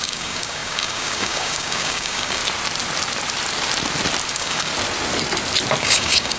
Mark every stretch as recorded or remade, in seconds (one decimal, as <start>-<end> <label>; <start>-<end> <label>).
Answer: 0.0-2.4 remade; 2.4-4.3 recorded; 4.3-4.7 remade; 4.7-5.8 recorded; 5.8-6.4 remade